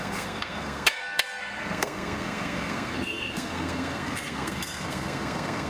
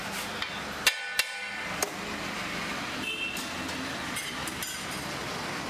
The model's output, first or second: first